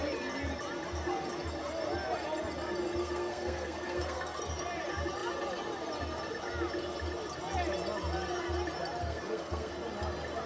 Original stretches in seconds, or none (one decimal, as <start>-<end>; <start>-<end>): 0.0-3.0; 4.4-9.0; 9.7-10.5